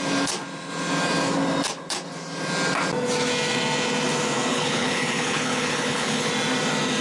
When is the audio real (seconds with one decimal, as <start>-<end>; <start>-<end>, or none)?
0.0-4.5; 6.3-7.0

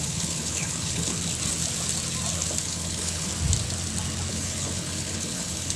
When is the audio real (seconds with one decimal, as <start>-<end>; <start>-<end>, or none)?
1.1-2.6; 3.3-4.3

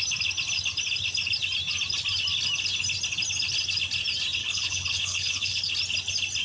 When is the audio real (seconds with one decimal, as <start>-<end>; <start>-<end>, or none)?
0.0-4.4; 5.7-6.4

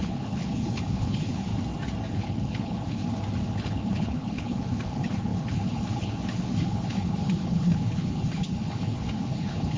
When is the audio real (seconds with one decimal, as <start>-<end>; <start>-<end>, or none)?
1.5-2.1; 3.0-3.5